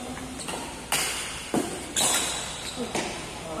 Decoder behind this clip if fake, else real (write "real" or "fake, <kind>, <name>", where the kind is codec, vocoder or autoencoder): real